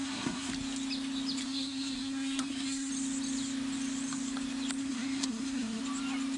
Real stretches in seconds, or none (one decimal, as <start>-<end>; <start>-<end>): 0.5-1.4; 2.9-4.8; 5.8-6.4